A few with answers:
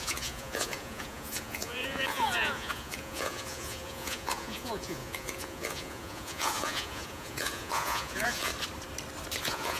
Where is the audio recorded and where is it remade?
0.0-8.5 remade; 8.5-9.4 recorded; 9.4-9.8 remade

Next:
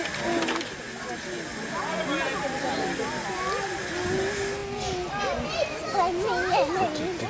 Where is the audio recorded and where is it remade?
0.0-7.3 recorded

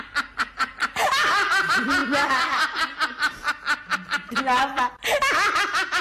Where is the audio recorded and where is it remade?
0.0-6.0 recorded